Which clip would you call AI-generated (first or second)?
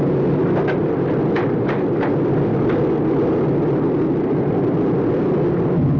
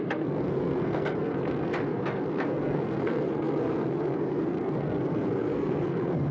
second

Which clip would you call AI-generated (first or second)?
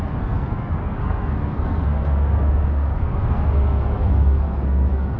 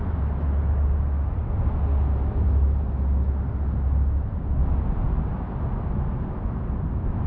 first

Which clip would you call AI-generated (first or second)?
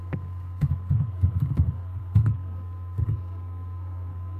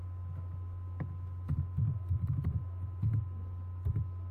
first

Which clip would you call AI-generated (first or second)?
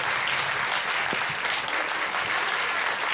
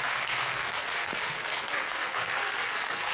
second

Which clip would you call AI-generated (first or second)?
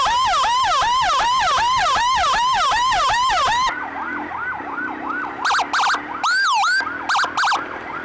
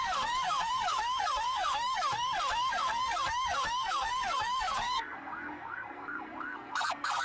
second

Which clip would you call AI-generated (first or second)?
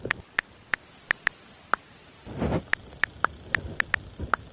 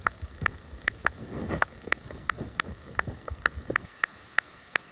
second